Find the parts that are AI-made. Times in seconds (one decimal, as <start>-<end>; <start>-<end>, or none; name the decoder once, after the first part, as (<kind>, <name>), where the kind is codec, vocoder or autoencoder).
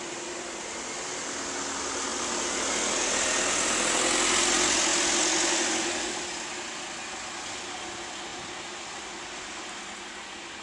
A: 8.3-9.1 (vocoder, BigVGAN v2)